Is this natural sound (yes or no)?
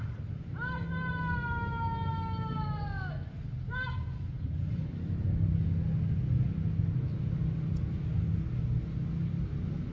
yes